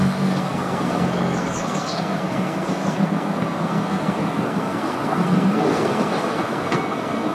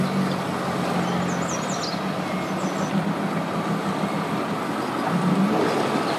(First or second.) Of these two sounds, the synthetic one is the first